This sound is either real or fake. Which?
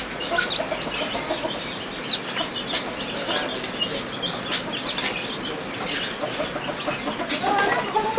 real